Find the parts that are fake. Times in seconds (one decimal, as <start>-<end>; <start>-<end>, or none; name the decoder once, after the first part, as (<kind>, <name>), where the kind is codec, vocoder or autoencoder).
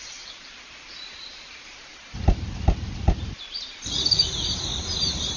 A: none